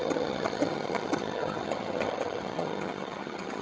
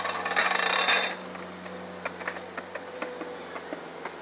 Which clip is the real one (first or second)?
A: second